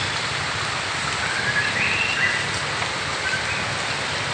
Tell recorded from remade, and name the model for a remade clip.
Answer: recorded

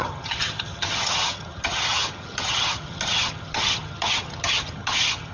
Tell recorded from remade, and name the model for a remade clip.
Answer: remade, vocoder, HiFi-GAN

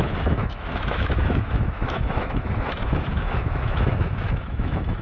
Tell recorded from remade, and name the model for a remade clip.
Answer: remade, autoencoder, DAC-VAE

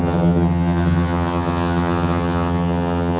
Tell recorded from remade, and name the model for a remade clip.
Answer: remade, vocoder, HiFi-GAN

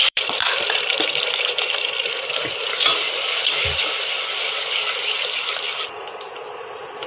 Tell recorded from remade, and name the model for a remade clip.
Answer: remade, vocoder, BigVGAN v2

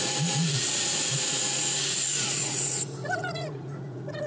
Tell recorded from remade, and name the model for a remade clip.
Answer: remade, vocoder, Vocos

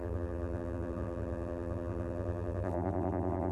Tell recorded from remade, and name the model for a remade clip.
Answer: remade, vocoder, BigVGAN v2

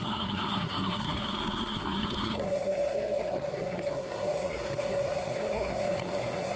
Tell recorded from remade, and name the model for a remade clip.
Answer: remade, codec, SNAC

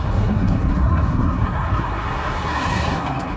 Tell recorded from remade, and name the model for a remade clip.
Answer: remade, codec, SNAC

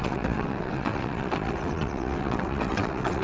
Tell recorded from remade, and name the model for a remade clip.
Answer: remade, vocoder, WaveNeXt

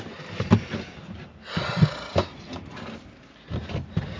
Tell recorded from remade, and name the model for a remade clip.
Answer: recorded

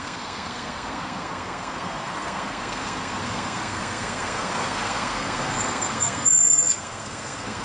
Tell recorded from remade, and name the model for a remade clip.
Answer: remade, codec, SNAC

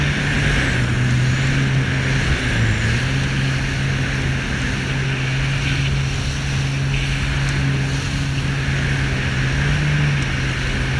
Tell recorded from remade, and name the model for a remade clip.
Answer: recorded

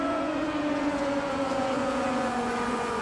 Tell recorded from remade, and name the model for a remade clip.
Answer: remade, vocoder, Vocos